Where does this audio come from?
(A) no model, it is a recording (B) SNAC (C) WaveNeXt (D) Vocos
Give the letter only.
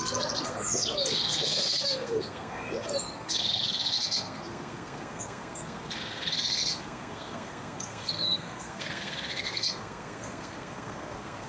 B